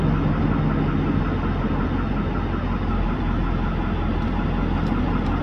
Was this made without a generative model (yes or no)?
yes